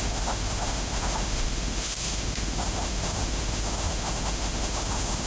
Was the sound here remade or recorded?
remade